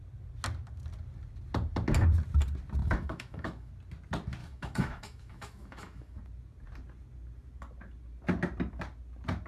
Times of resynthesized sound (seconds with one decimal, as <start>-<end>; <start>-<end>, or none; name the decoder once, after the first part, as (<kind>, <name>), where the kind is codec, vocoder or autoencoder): 2.8-3.7 (autoencoder, DAC-VAE); 4.4-6.2